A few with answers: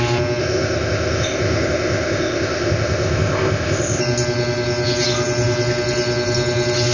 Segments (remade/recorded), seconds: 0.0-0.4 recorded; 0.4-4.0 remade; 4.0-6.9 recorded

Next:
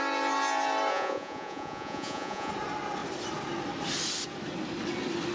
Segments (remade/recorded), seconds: 0.0-0.9 recorded; 0.9-2.5 remade; 2.5-5.3 recorded

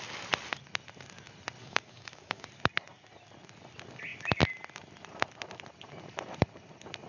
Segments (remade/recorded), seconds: 0.0-1.6 recorded; 1.6-2.5 remade; 2.5-7.1 recorded

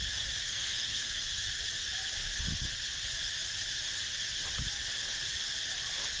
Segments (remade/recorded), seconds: 0.0-0.4 recorded; 0.4-1.4 remade; 1.4-6.2 recorded

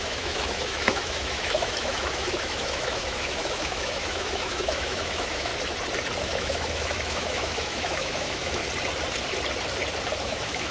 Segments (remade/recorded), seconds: 0.0-5.5 remade; 5.5-6.2 recorded; 6.2-8.6 remade; 8.6-10.2 recorded; 10.2-10.7 remade